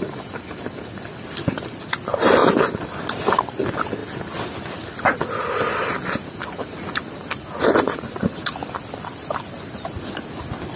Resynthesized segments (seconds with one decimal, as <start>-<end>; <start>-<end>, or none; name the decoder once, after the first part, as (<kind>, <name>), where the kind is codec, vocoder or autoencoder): none